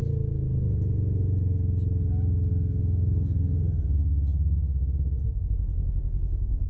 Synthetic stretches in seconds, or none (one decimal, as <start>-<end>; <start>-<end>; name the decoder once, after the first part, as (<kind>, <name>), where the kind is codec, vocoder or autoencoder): 2.5-6.7 (codec, SNAC)